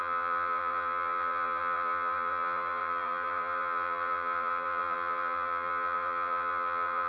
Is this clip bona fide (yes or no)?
no